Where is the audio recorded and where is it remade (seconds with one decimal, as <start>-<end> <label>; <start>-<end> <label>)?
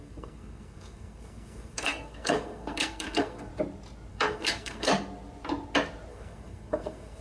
0.0-3.5 remade; 3.5-4.1 recorded; 4.1-4.9 remade; 4.9-6.1 recorded; 6.1-7.2 remade